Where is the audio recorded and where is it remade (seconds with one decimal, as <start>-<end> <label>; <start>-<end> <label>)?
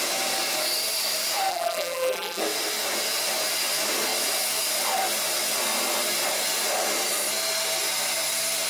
0.0-1.5 recorded; 1.5-2.4 remade; 2.4-8.7 recorded